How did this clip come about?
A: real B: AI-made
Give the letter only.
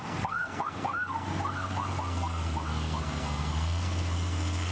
B